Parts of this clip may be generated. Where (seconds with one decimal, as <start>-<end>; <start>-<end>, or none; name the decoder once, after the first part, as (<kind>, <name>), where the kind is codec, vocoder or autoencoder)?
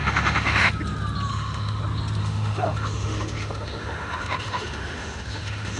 0.0-0.7 (autoencoder, DAC-VAE); 1.3-1.8; 2.2-5.8